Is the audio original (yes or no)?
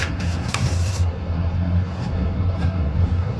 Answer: no